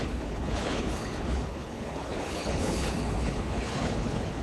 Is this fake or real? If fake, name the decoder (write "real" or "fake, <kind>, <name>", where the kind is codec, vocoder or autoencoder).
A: fake, codec, HILCodec